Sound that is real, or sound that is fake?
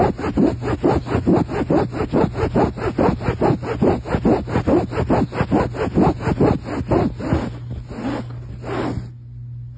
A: real